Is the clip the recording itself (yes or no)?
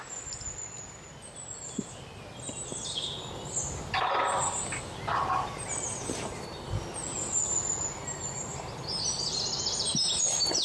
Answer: yes